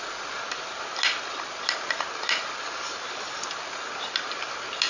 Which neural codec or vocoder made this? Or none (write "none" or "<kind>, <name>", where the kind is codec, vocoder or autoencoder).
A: none